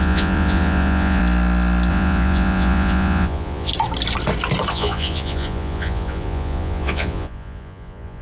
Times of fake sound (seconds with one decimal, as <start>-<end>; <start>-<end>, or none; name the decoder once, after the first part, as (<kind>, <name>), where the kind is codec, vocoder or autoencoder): 0.0-1.2 (vocoder, Vocos); 1.9-3.7; 4.7-8.2